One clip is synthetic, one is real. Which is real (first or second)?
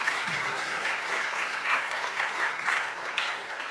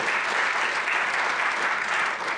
second